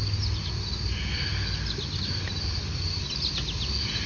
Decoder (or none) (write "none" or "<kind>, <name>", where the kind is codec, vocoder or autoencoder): none